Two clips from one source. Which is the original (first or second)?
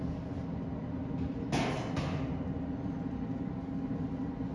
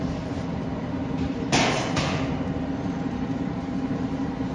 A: first